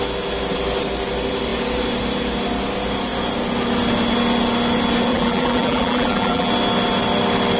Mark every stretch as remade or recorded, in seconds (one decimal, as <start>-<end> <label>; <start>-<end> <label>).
0.0-5.1 recorded; 5.1-6.5 remade; 6.5-7.6 recorded